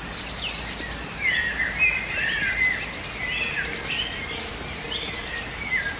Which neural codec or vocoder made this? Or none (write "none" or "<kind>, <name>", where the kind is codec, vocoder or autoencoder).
none